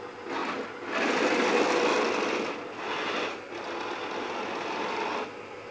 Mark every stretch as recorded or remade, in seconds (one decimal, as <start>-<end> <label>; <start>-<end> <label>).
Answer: 0.0-5.7 recorded